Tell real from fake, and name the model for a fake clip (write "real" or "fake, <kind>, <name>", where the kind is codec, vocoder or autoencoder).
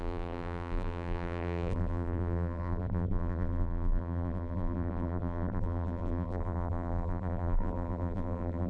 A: fake, vocoder, BigVGAN v2